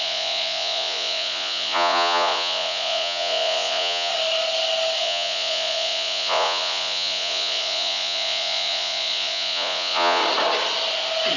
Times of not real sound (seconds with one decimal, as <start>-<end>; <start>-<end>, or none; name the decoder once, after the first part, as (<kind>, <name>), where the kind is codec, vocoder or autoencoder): 0.0-4.1 (vocoder, Vocos); 5.0-10.2